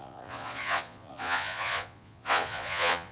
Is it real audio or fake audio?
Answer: fake